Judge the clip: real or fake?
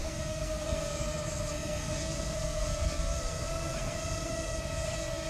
fake